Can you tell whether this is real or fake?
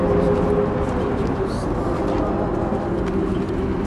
real